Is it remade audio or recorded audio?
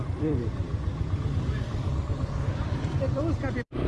remade